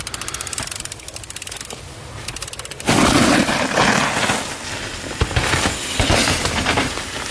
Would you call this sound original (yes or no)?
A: yes